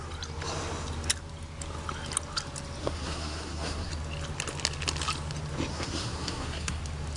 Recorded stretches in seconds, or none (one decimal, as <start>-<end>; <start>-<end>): 0.0-2.8; 3.9-5.7; 6.8-7.2